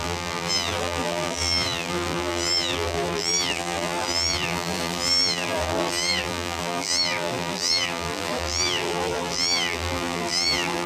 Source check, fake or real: fake